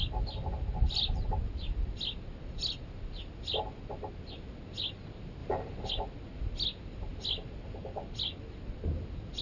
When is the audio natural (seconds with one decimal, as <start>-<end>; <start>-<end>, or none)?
0.0-9.4